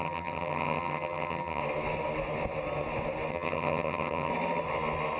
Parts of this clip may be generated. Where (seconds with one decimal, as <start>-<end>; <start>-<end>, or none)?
0.0-1.6; 3.3-4.3